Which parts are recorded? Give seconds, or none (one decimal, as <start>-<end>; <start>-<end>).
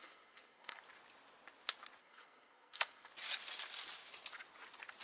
0.8-2.0; 3.1-5.0